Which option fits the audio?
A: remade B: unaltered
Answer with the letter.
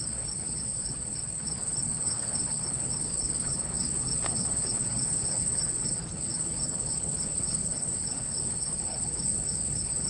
A